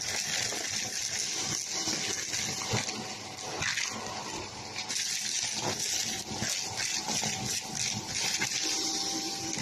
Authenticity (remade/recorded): recorded